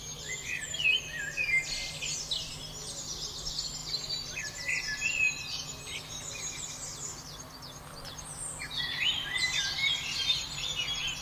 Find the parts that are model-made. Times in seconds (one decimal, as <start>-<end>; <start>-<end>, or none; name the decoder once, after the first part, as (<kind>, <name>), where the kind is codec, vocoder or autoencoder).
none